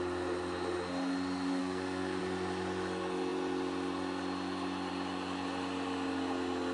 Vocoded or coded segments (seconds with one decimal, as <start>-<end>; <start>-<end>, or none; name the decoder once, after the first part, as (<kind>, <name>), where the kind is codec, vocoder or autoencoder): 1.6-2.2 (codec, SNAC)